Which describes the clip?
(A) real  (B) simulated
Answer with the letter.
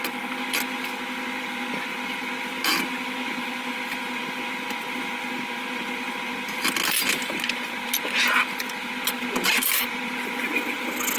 A